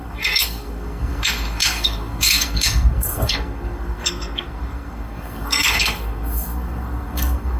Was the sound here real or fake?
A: fake